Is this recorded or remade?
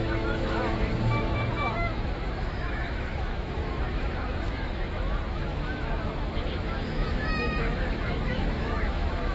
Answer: remade